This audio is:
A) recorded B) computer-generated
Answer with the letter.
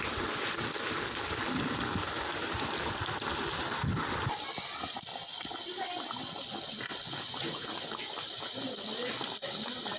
A